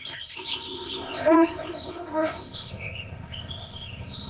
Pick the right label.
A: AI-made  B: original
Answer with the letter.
A